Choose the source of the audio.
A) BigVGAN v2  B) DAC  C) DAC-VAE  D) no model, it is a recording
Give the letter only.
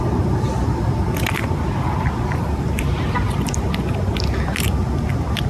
D